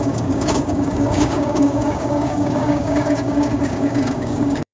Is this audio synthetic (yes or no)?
yes